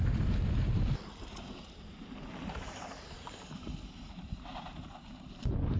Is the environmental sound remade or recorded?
remade